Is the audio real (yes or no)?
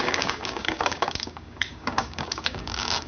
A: no